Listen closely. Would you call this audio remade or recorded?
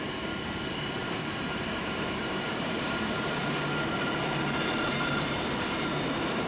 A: remade